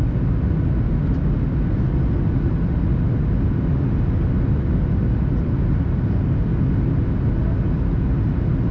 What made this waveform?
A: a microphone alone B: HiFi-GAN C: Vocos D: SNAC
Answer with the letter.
A